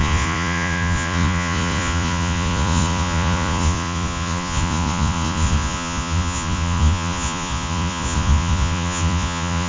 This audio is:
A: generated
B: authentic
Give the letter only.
A